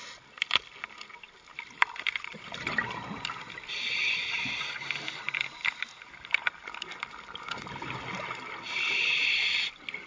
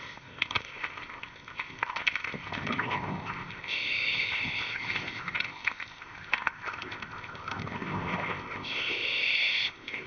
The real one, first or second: first